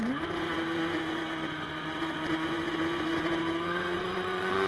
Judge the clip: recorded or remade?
remade